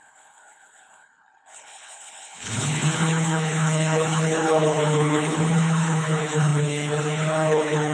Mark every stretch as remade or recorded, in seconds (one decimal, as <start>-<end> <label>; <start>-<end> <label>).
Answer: 0.0-7.9 remade